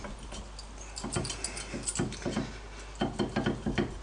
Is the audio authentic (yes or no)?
yes